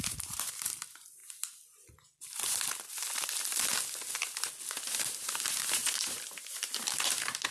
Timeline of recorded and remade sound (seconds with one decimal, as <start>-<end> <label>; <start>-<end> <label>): 0.0-1.2 remade; 1.2-4.7 recorded; 4.7-7.5 remade